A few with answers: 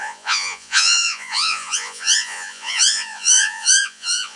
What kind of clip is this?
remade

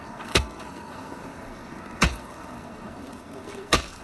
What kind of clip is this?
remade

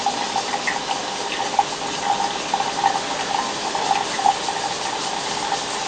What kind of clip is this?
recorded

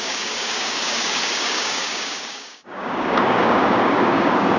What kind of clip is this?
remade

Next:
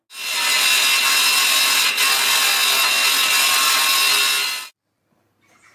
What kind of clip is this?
recorded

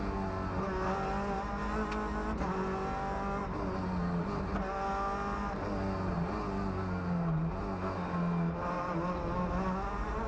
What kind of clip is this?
recorded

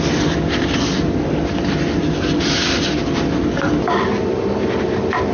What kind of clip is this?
recorded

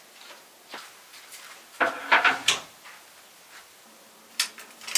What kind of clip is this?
recorded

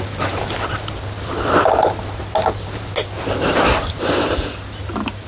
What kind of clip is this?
recorded